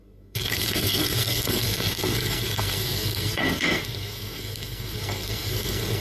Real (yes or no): no